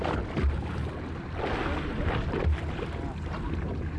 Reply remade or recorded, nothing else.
recorded